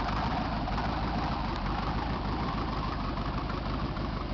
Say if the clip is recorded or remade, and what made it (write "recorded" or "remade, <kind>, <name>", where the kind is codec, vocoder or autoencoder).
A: recorded